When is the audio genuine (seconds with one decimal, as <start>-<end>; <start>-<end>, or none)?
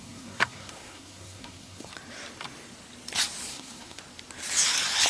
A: 1.9-3.5; 4.0-5.1